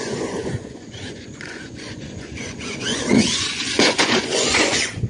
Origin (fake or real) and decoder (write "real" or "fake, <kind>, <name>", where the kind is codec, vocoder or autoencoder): fake, vocoder, Vocos